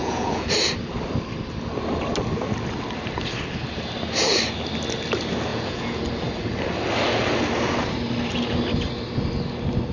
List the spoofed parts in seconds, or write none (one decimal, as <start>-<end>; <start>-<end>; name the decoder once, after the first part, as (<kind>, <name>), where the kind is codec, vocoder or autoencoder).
0.0-0.5 (vocoder, Vocos); 5.5-6.0